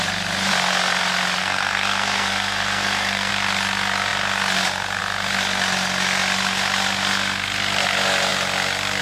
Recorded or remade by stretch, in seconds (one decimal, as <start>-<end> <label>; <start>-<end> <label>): 0.0-1.4 recorded; 1.4-3.3 remade; 3.3-9.0 recorded